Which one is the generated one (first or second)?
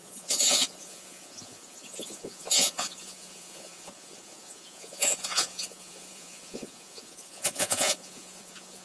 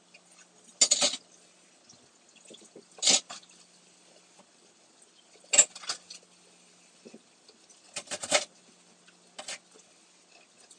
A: first